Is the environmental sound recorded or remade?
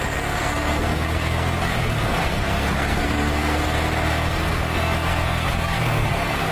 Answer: remade